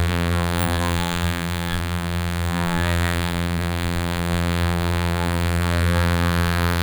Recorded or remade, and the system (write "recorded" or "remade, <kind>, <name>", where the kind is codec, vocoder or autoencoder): remade, vocoder, BigVGAN v2